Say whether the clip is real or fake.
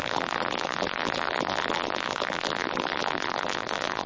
fake